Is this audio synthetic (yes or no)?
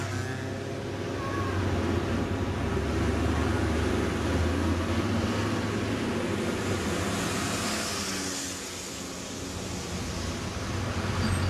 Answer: no